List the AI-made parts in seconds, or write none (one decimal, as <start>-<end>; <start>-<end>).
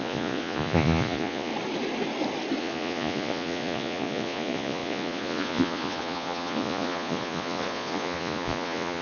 0.0-1.5; 2.6-9.0